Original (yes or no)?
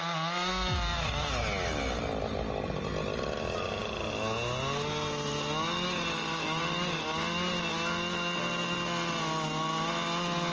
yes